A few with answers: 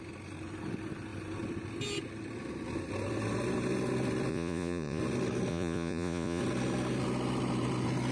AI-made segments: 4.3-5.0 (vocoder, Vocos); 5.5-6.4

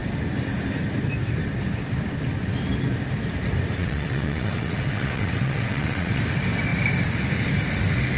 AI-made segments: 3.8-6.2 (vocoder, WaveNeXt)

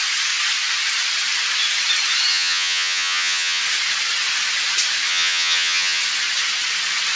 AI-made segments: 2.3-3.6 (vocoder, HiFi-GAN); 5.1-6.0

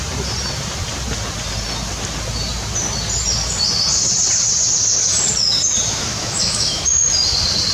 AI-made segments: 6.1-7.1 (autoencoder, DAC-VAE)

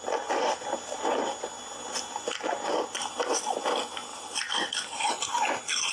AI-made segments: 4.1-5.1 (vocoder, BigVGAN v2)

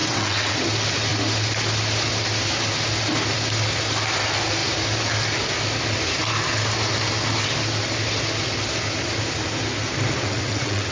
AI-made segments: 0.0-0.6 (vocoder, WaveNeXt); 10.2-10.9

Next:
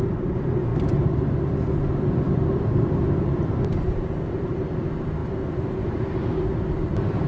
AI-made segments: 0.0-7.3 (vocoder, BigVGAN v2)

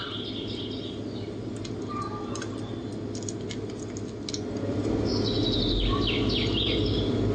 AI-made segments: none